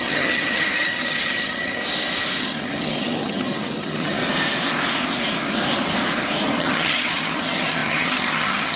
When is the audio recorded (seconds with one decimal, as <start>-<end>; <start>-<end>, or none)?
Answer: 1.8-2.4; 4.2-6.6